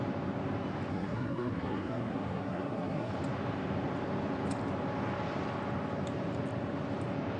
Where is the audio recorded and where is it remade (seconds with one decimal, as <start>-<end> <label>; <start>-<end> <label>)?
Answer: 0.0-0.9 recorded; 0.9-3.1 remade; 3.1-7.4 recorded